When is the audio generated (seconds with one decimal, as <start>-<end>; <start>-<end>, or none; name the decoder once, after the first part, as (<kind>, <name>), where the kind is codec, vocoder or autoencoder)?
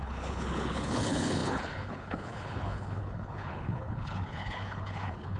0.0-5.4 (codec, HILCodec)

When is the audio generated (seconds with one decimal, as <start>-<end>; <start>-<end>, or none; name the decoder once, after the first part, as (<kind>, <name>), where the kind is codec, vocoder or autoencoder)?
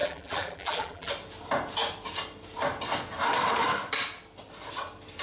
0.0-1.1 (vocoder, BigVGAN v2)